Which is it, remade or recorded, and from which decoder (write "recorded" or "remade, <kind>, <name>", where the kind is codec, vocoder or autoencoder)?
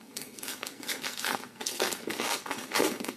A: remade, codec, SNAC